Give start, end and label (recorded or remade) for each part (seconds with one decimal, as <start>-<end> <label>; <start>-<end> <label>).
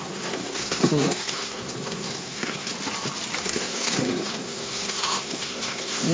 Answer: 0.0-2.7 remade; 2.7-3.4 recorded; 3.4-6.1 remade